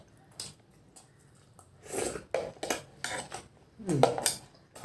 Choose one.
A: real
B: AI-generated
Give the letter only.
A